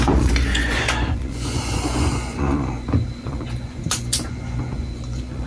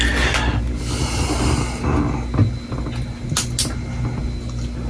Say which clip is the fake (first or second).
first